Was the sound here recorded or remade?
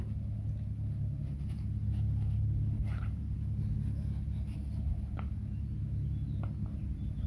recorded